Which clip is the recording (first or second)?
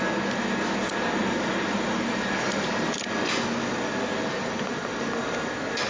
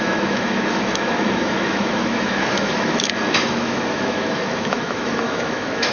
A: first